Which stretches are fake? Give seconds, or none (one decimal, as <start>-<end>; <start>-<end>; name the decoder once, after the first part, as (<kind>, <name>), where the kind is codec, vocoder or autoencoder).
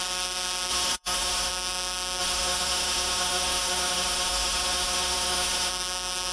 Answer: 0.7-1.5 (autoencoder, DAC-VAE); 2.2-5.7